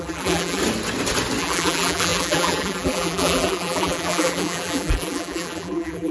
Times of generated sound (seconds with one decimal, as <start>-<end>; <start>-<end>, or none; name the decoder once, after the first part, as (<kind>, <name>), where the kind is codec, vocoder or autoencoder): 0.0-0.6 (vocoder, BigVGAN v2); 1.4-6.1